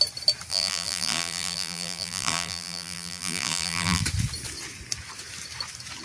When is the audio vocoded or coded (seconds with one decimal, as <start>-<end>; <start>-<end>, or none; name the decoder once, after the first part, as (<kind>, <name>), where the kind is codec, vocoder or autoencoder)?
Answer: 0.5-4.0 (vocoder, BigVGAN v2)